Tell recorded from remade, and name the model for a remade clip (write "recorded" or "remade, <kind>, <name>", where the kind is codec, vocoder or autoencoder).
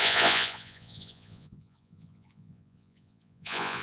remade, vocoder, Vocos